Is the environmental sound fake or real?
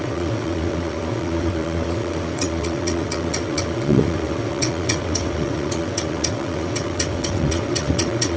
fake